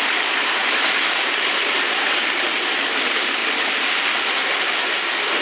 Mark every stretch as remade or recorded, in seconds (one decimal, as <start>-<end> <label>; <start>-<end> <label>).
0.0-0.6 remade; 0.6-1.1 recorded; 1.1-3.4 remade; 3.4-4.8 recorded; 4.8-5.4 remade